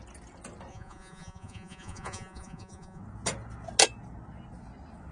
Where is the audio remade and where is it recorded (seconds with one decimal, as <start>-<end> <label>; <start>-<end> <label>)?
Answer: 0.0-0.7 recorded; 0.7-3.0 remade; 3.0-5.1 recorded